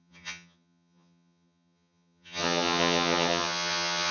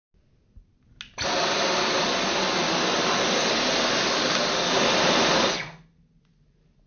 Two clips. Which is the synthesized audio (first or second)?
first